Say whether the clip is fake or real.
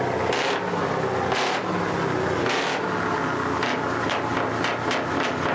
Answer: real